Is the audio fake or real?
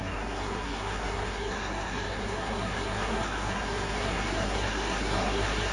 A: fake